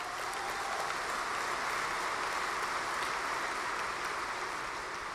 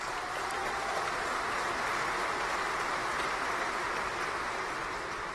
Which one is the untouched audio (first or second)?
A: first